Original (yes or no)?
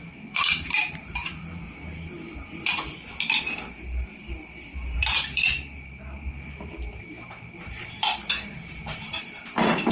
no